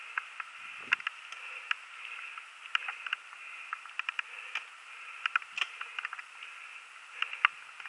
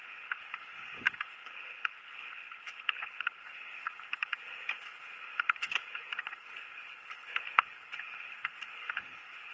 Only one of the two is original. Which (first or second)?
first